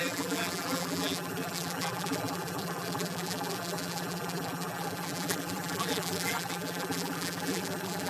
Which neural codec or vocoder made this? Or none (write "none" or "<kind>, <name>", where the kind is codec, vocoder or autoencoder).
vocoder, BigVGAN v2